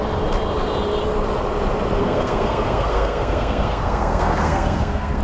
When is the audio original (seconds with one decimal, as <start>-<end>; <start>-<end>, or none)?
0.0-2.0